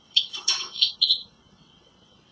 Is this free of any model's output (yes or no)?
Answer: no